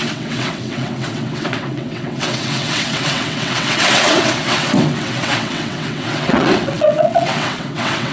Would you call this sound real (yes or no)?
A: no